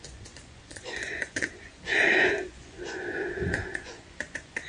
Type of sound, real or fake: fake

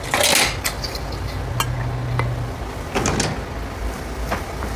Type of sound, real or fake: real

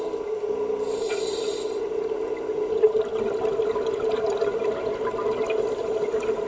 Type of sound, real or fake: real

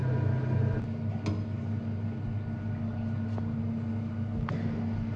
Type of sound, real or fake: real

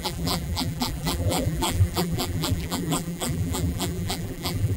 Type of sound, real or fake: fake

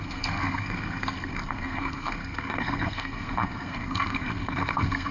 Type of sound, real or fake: fake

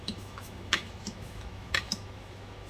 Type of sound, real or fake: fake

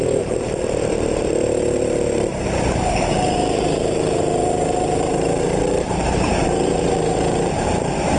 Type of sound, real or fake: fake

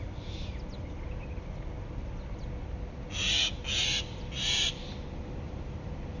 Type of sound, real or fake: real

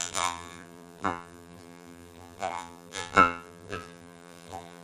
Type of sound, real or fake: fake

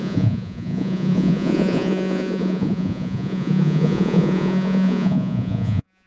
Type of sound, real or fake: fake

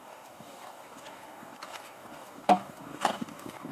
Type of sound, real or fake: fake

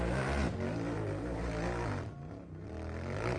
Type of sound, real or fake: real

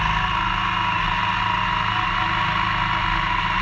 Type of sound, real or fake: real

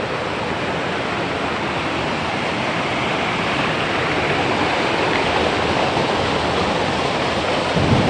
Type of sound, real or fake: real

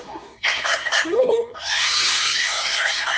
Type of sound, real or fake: fake